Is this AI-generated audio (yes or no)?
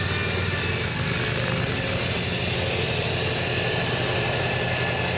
no